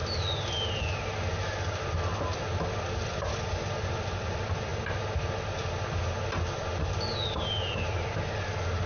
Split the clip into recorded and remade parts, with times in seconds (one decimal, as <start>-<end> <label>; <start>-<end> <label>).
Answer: 0.0-8.9 recorded